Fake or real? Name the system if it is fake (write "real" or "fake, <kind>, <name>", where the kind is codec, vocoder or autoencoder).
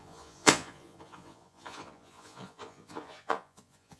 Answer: fake, vocoder, Vocos